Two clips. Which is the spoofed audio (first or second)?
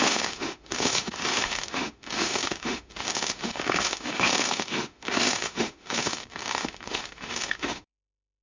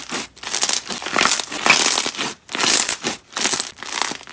first